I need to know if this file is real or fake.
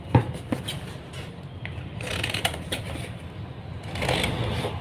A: real